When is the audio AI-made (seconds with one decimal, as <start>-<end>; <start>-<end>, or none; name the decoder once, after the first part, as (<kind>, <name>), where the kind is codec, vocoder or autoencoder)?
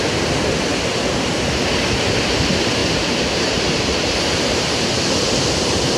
2.8-4.7 (vocoder, BigVGAN v2)